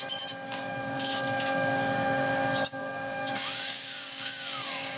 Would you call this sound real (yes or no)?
no